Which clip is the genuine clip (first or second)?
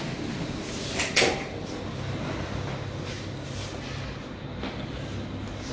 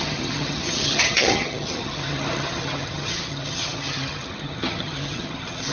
first